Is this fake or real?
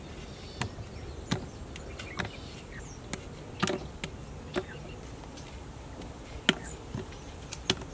real